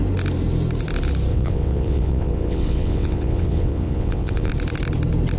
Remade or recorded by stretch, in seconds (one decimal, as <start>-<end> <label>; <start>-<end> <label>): 0.0-1.3 recorded; 1.3-4.5 remade; 4.5-5.4 recorded